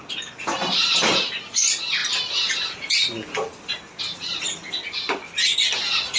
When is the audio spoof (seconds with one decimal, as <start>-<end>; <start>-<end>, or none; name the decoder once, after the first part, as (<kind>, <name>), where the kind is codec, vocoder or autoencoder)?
none